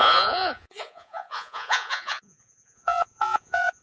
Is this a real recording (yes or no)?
no